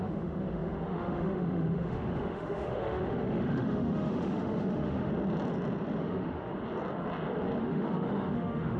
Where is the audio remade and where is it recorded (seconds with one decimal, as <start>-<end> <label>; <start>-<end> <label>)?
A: 0.0-5.1 remade; 5.1-6.0 recorded; 6.0-6.5 remade; 6.5-7.6 recorded; 7.6-8.8 remade